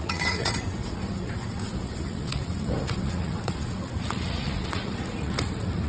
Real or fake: fake